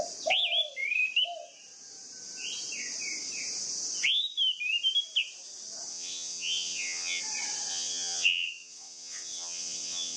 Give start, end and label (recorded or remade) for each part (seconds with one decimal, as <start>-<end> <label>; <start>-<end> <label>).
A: 0.0-5.9 recorded; 5.9-7.2 remade; 7.2-7.7 recorded; 7.7-10.2 remade